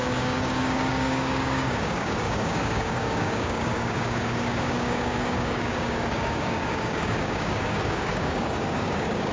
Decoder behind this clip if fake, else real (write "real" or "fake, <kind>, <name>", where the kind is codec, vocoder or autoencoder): fake, codec, DAC